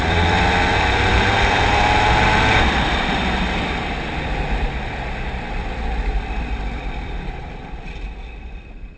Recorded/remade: remade